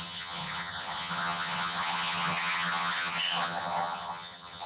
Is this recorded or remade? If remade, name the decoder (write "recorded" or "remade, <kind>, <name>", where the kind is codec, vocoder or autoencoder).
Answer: remade, vocoder, HiFi-GAN